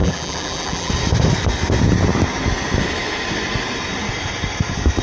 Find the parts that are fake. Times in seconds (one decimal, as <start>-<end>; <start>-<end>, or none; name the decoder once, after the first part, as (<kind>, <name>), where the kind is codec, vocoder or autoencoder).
0.0-0.9 (vocoder, BigVGAN v2)